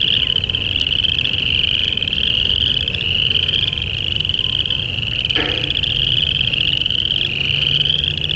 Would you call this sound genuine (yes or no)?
yes